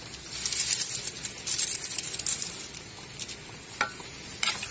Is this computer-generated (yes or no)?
no